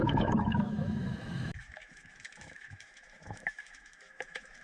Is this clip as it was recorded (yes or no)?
no